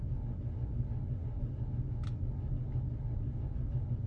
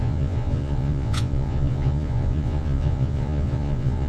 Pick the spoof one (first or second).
second